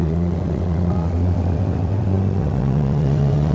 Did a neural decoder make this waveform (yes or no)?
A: yes